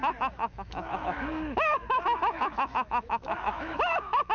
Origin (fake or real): fake